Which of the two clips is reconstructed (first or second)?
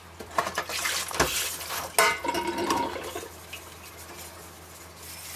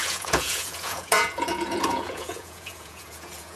second